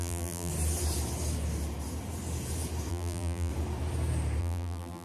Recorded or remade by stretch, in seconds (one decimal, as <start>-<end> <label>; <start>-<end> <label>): 0.0-0.5 remade; 0.5-2.9 recorded; 2.9-3.5 remade; 3.5-4.4 recorded; 4.4-5.0 remade